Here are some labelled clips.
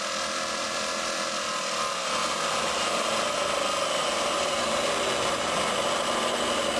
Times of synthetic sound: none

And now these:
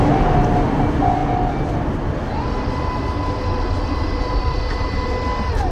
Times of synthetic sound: none